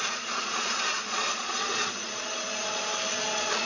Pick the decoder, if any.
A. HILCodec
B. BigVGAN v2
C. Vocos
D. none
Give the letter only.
C